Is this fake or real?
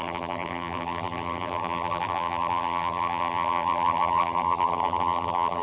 fake